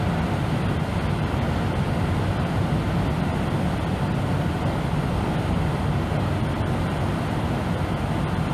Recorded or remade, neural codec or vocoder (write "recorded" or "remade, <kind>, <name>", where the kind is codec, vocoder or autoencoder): recorded